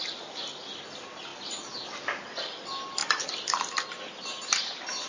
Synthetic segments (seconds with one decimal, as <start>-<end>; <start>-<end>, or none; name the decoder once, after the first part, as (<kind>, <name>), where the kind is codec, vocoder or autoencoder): none